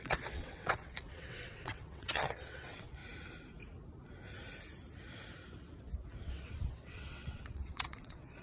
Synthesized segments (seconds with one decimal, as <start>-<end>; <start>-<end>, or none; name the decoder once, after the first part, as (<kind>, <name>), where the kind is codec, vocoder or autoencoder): 0.0-3.0 (vocoder, WaveNeXt); 6.2-8.4